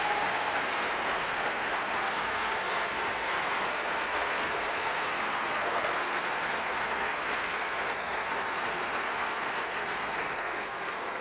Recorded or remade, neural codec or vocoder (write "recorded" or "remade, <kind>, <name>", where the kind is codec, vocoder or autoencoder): remade, codec, SNAC